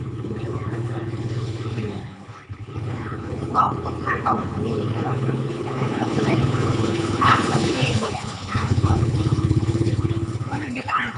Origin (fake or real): fake